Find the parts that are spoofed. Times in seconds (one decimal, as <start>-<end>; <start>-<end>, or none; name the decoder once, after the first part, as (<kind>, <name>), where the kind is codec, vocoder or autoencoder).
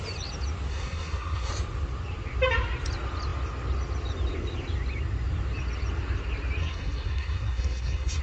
0.7-1.5 (codec, SNAC); 6.6-8.2